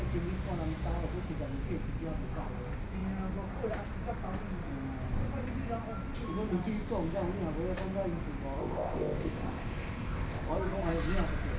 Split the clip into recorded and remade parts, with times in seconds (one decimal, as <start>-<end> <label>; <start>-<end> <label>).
0.0-8.6 recorded; 8.6-10.5 remade; 10.5-11.6 recorded